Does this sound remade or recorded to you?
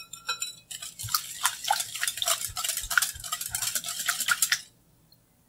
recorded